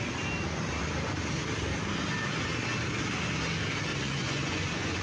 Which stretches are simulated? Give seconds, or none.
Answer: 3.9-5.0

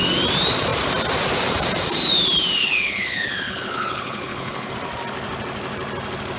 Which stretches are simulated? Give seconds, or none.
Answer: 2.6-4.7